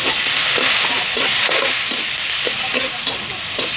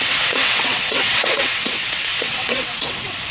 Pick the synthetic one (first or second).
second